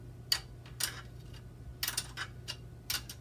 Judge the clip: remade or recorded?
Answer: recorded